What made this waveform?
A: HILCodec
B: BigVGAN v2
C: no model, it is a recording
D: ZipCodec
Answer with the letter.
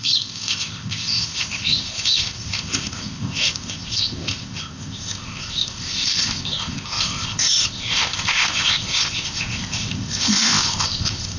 D